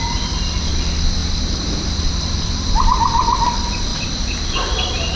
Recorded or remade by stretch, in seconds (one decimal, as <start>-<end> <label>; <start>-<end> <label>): 0.0-3.9 recorded; 3.9-4.8 remade; 4.8-5.2 recorded